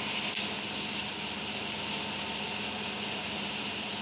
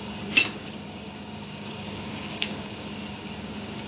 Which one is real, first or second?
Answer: first